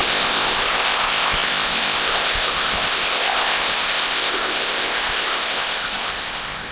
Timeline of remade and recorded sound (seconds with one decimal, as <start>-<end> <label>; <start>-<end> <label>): 0.0-6.7 remade